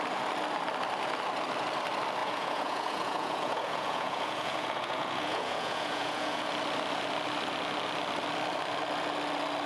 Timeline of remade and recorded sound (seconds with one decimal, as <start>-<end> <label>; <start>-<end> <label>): 0.0-2.2 recorded; 2.2-6.5 remade; 6.5-9.7 recorded